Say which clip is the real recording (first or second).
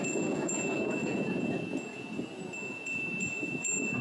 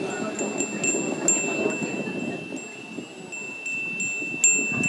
second